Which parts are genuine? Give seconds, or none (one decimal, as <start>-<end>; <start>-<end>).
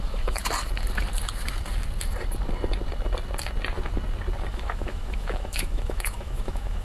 0.4-4.5